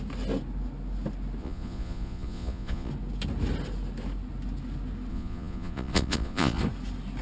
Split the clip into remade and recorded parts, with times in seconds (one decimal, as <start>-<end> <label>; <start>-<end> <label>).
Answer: 0.0-1.4 recorded; 1.4-2.9 remade; 2.9-5.1 recorded; 5.1-6.6 remade; 6.6-7.2 recorded